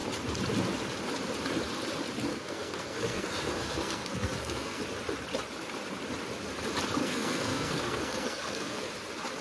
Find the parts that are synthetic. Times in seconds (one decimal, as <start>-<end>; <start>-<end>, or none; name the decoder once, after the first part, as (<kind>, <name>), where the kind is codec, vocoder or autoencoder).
2.3-4.8 (codec, SNAC); 7.0-8.9